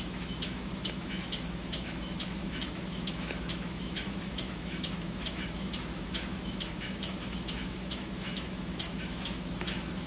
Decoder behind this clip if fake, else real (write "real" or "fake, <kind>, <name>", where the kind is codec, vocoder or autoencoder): fake, autoencoder, DAC-VAE